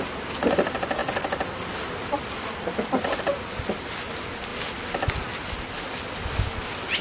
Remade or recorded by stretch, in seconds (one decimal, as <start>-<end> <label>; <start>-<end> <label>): 0.0-7.0 recorded